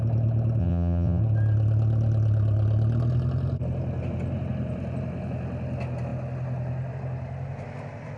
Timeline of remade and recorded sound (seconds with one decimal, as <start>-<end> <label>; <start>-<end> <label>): 0.0-0.6 recorded; 0.6-1.2 remade; 1.2-8.2 recorded